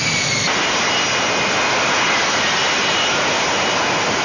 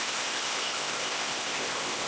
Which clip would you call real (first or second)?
first